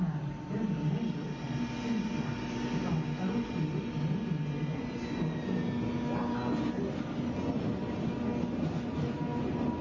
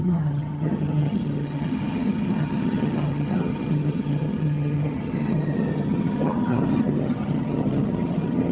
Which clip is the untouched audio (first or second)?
first